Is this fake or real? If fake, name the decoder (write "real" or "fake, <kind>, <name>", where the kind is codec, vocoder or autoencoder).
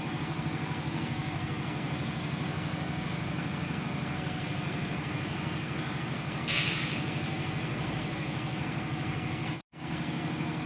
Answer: fake, codec, SNAC